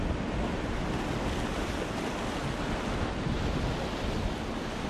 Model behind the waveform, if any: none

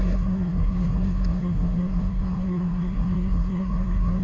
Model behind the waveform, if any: codec, SNAC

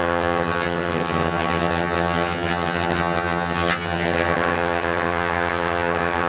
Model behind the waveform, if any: vocoder, HiFi-GAN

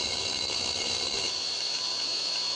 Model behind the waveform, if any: autoencoder, DAC-VAE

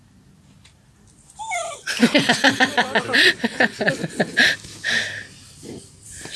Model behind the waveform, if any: none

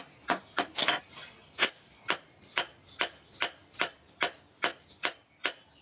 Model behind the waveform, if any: none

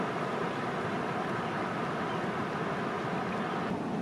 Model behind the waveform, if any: none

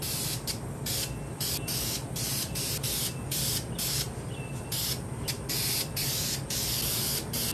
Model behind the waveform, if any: none